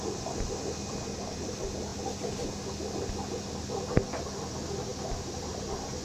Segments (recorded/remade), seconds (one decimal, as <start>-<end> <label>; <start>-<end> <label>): 0.0-6.0 recorded